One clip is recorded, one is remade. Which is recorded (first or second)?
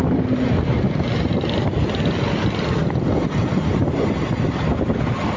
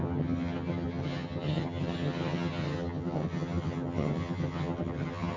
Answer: first